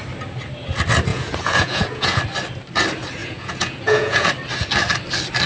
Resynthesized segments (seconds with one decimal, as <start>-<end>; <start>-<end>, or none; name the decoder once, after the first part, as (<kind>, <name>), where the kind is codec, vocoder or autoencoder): 1.1-2.2 (vocoder, Vocos); 3.2-4.3